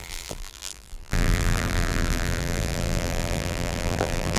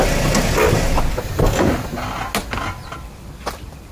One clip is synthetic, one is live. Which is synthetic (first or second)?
first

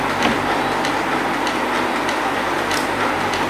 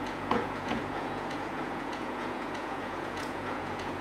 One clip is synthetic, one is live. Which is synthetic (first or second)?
second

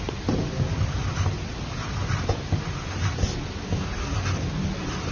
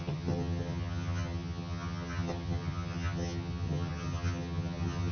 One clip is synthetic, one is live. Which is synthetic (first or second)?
second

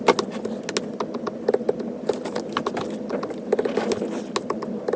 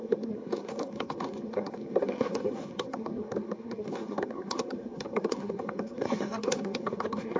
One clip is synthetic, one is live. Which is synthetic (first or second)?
second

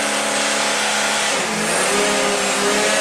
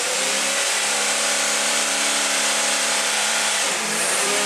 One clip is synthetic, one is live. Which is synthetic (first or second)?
second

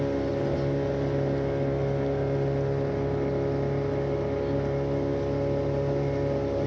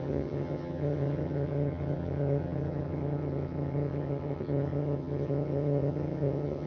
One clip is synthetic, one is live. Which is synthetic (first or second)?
second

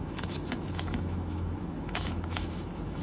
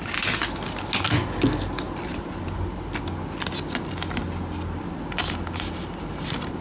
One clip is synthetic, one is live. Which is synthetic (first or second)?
first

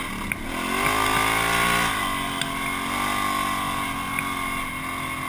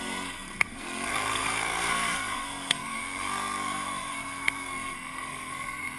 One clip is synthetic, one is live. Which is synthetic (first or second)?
second